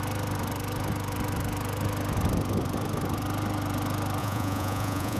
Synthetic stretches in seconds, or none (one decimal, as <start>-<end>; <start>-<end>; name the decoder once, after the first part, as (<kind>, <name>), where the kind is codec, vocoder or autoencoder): 4.2-5.2 (vocoder, Vocos)